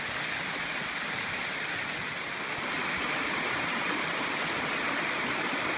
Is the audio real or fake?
real